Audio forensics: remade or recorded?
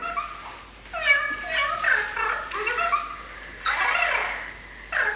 recorded